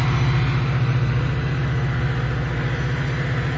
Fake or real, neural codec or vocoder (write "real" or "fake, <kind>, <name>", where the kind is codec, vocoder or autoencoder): real